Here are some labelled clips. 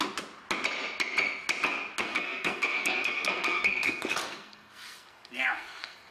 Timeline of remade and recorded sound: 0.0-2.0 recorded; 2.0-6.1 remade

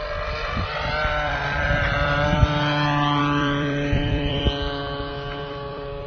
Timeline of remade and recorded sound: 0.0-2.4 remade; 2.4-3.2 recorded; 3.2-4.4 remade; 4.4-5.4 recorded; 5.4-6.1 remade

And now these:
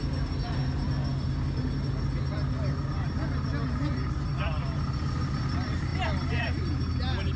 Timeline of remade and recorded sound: 0.0-7.4 recorded

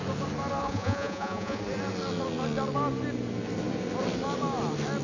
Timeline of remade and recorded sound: 0.0-0.6 recorded; 0.6-1.6 remade; 1.6-5.0 recorded

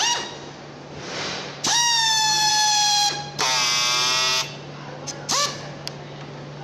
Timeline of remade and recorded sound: 0.0-1.7 recorded; 1.7-2.5 remade; 2.5-6.6 recorded

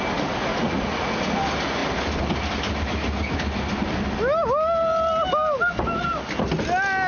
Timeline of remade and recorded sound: 0.0-0.5 recorded; 0.5-1.3 remade; 1.3-7.1 recorded

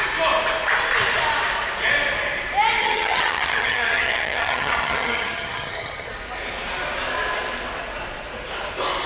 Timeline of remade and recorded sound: 0.0-2.8 recorded; 2.8-6.1 remade; 6.1-9.1 recorded

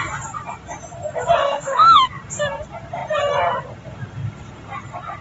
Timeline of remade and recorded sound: 0.0-1.4 recorded; 1.4-2.1 remade; 2.1-5.2 recorded